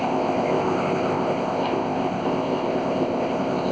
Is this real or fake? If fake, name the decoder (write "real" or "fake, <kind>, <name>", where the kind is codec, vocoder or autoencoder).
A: fake, codec, ZipCodec